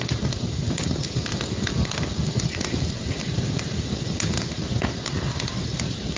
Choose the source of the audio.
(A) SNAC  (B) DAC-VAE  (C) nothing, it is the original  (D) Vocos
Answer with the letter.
C